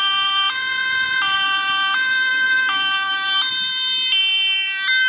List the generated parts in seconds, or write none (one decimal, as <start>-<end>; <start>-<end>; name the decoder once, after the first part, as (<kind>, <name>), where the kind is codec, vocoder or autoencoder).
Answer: 4.2-5.1 (vocoder, BigVGAN v2)